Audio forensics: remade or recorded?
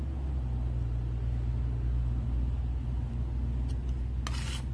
recorded